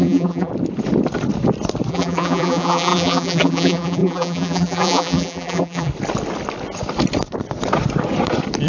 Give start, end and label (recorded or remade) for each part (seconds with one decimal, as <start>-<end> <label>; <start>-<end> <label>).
0.0-0.5 remade; 0.5-1.9 recorded; 1.9-5.9 remade; 5.9-8.7 recorded